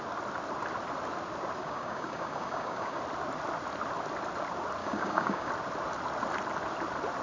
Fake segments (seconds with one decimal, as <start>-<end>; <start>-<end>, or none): 1.6-3.0; 4.8-5.5